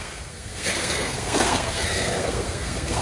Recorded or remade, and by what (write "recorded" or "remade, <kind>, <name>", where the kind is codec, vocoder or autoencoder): remade, codec, SNAC